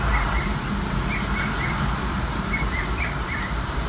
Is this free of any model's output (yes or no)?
no